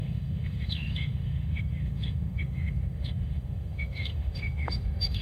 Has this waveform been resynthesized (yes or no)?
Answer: yes